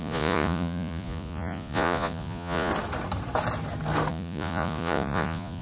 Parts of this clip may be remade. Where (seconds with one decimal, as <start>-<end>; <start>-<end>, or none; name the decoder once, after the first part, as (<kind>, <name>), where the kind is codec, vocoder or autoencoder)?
0.0-2.7 (vocoder, Vocos); 4.1-5.6